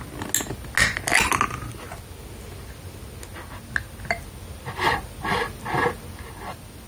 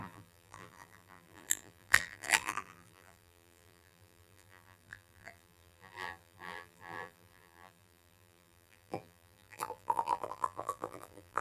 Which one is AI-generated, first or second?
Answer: second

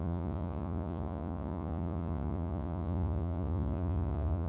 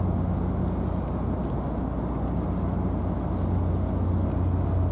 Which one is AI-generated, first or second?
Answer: first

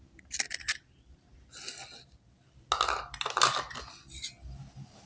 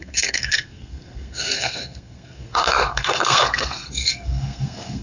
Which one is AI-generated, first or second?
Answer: second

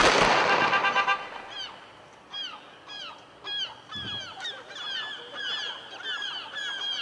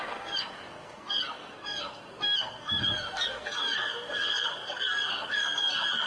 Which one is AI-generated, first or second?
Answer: second